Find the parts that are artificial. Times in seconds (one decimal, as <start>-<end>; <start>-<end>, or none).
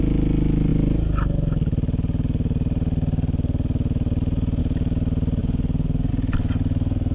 none